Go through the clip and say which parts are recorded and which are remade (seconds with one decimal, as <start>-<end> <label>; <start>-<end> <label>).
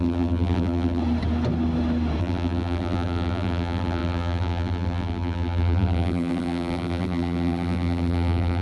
0.0-1.0 remade; 1.0-2.2 recorded; 2.2-8.6 remade